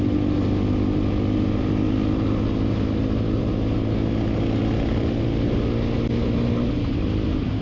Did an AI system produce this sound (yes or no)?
no